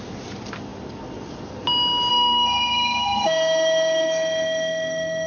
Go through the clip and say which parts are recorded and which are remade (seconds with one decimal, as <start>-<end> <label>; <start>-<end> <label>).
0.0-2.1 recorded; 2.1-5.3 remade

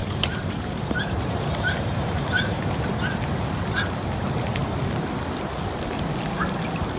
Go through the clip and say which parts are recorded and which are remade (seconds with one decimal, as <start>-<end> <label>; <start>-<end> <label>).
0.0-2.8 remade; 2.8-7.0 recorded

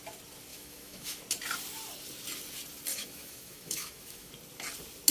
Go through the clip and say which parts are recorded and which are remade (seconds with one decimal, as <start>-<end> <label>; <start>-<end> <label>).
0.0-0.5 recorded; 0.5-1.2 remade; 1.2-2.9 recorded; 2.9-4.3 remade; 4.3-5.1 recorded

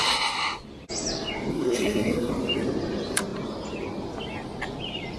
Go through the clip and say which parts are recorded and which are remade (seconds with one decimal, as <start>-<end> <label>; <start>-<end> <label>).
0.0-1.5 recorded; 1.5-2.3 remade; 2.3-5.2 recorded

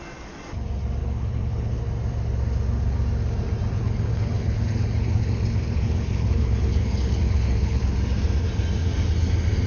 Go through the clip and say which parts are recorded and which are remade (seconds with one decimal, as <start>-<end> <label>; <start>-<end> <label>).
0.0-1.0 recorded; 1.0-1.8 remade; 1.8-3.8 recorded; 3.8-7.8 remade; 7.8-9.7 recorded

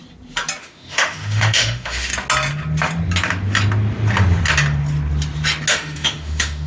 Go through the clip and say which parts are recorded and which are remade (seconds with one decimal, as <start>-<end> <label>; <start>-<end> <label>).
0.0-0.6 recorded; 0.6-2.1 remade; 2.1-5.7 recorded; 5.7-6.7 remade

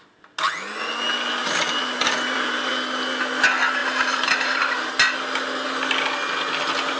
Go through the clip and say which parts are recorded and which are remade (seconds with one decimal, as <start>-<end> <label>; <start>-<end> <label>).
0.0-1.4 recorded; 1.4-2.7 remade; 2.7-3.8 recorded; 3.8-4.9 remade; 4.9-7.0 recorded